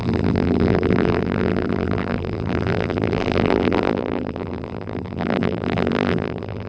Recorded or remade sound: remade